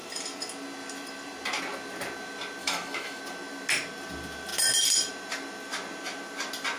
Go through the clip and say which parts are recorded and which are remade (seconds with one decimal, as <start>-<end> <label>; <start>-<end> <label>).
0.0-2.6 recorded; 2.6-3.2 remade; 3.2-6.8 recorded